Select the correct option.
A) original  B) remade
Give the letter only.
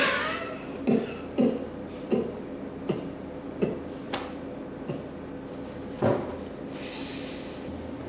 A